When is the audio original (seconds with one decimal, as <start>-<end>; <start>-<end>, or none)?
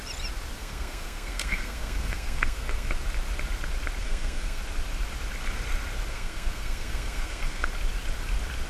0.0-0.6; 2.9-4.0; 4.6-6.1; 7.7-8.7